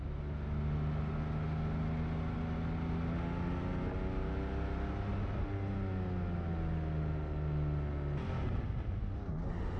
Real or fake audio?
real